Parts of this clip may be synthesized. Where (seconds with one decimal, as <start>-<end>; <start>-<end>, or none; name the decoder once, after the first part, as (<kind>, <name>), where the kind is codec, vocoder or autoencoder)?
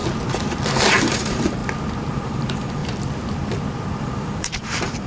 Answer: 0.9-1.6 (vocoder, BigVGAN v2); 2.1-2.8; 4.0-5.1